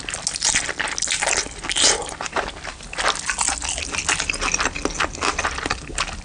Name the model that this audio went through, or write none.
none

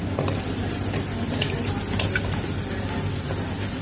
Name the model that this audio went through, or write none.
none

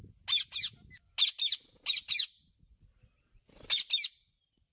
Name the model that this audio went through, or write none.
none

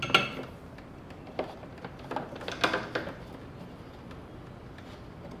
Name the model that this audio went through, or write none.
none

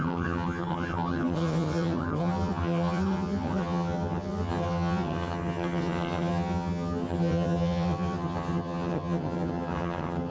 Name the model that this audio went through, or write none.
vocoder, HiFi-GAN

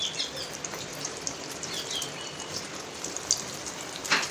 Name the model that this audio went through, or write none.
none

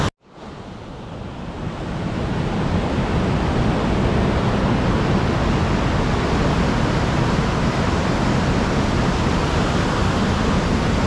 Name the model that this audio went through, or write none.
none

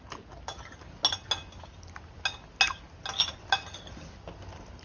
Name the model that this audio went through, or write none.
none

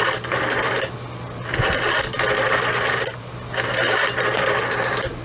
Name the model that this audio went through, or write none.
none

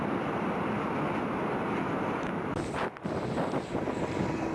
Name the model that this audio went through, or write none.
none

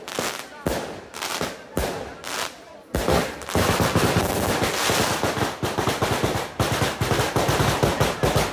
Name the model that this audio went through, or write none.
none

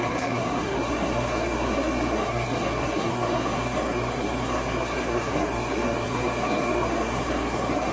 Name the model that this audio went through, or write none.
codec, SNAC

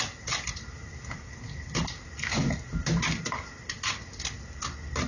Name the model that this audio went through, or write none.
none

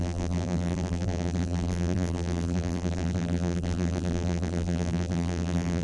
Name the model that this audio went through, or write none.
vocoder, BigVGAN v2